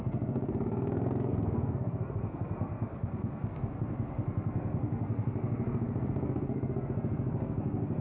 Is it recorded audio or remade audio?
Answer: remade